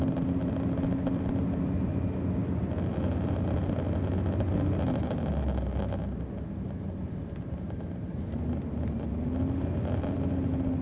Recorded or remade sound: recorded